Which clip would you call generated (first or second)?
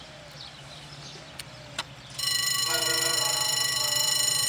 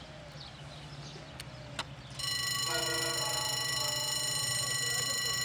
first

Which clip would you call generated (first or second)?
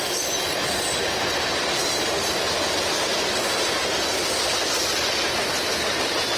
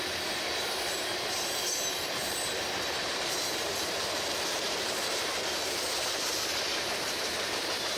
second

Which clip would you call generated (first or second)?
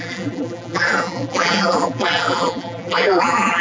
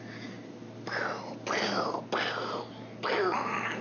first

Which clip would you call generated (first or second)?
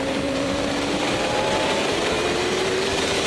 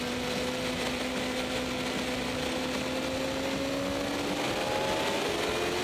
first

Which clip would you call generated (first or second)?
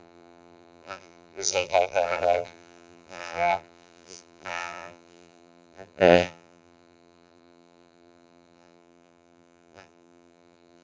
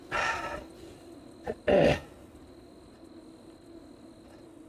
first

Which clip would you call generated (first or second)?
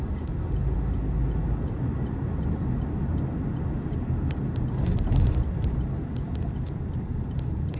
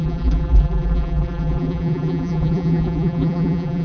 second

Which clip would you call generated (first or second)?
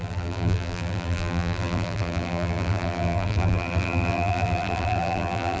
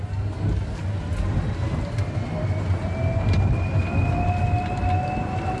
first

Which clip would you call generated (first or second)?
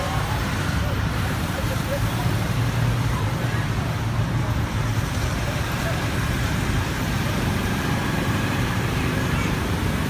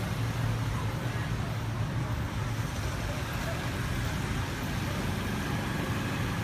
first